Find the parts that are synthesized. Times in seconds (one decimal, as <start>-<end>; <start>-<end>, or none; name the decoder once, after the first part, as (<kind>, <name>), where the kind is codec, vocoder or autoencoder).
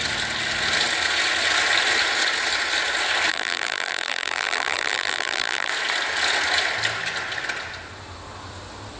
3.3-5.7 (vocoder, BigVGAN v2)